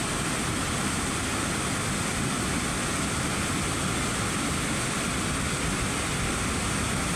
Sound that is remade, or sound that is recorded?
recorded